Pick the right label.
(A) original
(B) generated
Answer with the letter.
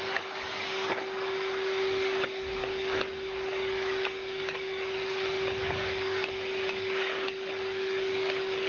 B